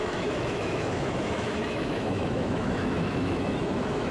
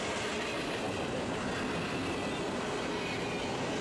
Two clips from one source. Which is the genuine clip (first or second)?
second